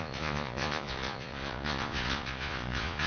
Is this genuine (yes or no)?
no